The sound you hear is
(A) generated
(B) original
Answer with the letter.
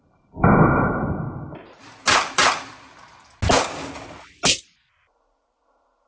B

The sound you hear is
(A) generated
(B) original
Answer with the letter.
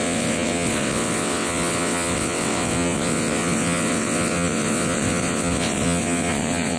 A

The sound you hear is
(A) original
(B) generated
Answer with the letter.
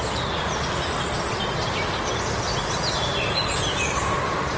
A